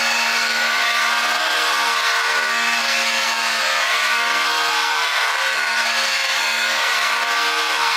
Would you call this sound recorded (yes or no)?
no